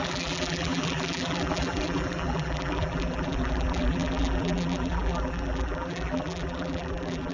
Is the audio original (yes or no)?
no